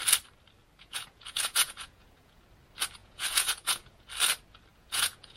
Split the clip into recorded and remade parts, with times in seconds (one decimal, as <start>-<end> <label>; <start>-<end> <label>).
0.0-0.8 recorded; 0.8-2.4 remade; 2.4-3.0 recorded; 3.0-4.1 remade; 4.1-4.7 recorded; 4.7-5.4 remade